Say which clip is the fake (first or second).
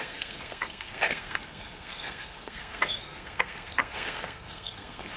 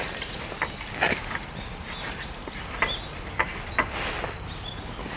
first